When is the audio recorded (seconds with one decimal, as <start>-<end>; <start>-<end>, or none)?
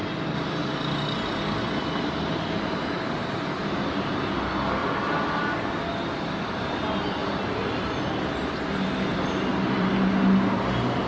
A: 4.3-4.8; 6.3-7.2; 9.9-11.1